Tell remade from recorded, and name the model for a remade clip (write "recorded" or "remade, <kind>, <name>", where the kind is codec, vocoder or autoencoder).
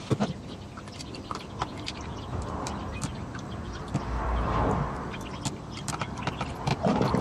recorded